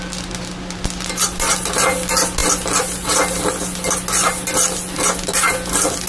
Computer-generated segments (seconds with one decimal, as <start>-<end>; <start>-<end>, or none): none